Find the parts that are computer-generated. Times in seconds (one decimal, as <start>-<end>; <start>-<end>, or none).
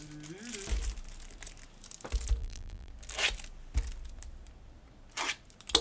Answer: 2.4-2.9